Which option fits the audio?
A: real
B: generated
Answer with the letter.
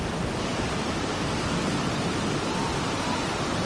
B